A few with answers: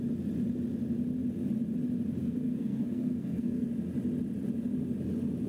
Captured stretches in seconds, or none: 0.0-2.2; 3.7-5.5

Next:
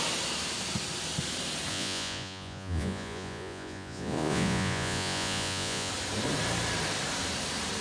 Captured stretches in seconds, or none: 0.0-1.7; 5.9-7.8